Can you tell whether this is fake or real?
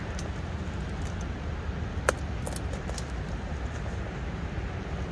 real